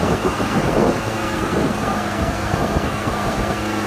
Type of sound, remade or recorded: remade